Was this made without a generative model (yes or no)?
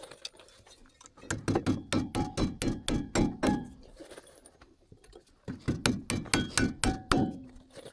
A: yes